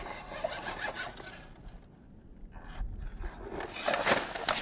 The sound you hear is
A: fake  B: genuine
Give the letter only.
B